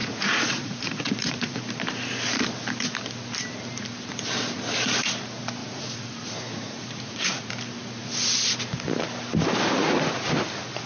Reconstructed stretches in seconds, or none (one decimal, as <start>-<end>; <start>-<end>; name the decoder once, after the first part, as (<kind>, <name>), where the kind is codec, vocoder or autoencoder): 0.0-1.6 (vocoder, Vocos); 5.6-7.5